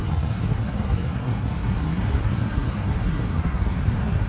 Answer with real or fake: fake